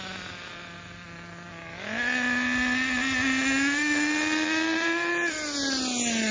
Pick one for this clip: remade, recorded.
recorded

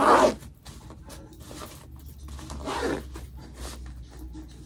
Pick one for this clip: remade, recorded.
recorded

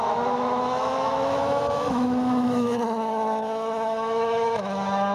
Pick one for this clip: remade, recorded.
remade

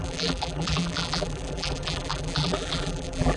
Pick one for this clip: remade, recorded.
remade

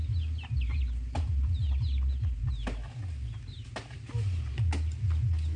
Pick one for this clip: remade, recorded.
recorded